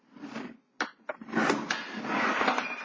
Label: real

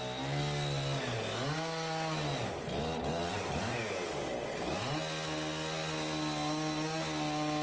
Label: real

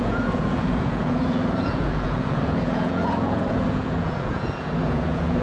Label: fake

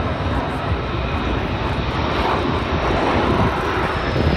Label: real